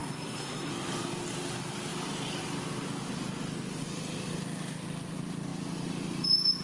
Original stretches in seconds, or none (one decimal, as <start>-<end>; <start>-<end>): 0.7-6.6